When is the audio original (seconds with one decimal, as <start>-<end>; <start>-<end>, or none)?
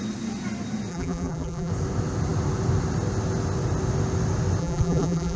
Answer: 0.0-0.9; 1.7-4.6